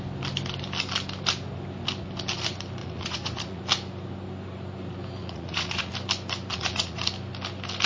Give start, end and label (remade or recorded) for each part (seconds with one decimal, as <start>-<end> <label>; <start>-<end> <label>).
0.0-2.8 recorded; 2.8-3.6 remade; 3.6-5.2 recorded; 5.2-5.9 remade; 5.9-6.5 recorded; 6.5-7.1 remade; 7.1-7.9 recorded